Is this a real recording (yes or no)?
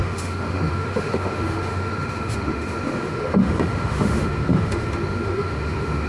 no